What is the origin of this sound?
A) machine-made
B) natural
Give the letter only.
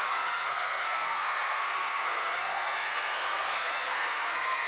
A